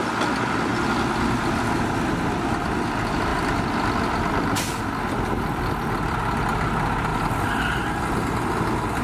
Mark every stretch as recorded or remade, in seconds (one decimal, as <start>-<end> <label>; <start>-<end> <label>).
0.0-3.3 recorded; 3.3-4.8 remade; 4.8-9.0 recorded